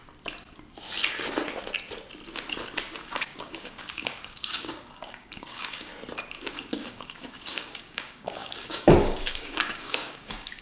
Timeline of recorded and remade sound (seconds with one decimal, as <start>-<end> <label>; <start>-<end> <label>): 0.0-3.0 recorded; 3.0-5.9 remade; 5.9-6.5 recorded; 6.5-10.6 remade